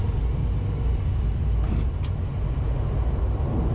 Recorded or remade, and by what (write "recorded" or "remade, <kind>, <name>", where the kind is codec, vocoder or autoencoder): recorded